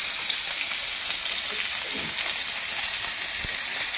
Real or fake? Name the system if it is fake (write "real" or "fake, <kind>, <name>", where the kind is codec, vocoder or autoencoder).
real